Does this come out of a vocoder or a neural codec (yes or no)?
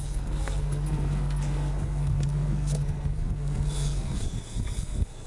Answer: yes